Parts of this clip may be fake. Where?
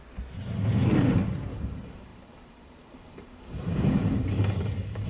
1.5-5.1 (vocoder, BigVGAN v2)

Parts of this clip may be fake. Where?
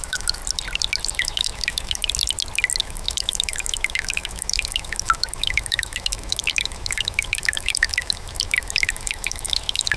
0.0-0.4 (autoencoder, DAC-VAE); 1.0-2.0; 2.8-10.0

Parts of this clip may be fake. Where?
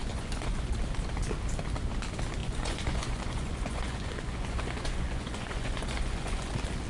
0.0-0.7 (vocoder, Vocos); 2.4-6.5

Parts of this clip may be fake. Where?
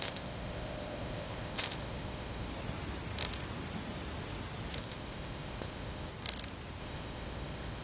0.0-2.5 (codec, ZipCodec); 4.8-6.1; 6.8-7.8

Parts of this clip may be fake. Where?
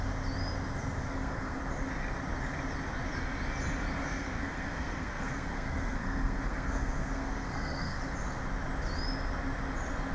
1.0-1.6 (codec, SNAC); 4.0-8.0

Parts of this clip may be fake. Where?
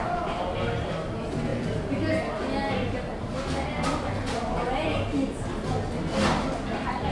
none